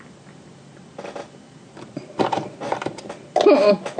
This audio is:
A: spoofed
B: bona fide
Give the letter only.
B